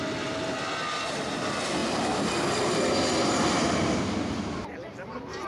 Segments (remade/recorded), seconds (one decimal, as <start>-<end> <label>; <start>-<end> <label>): 0.0-5.5 recorded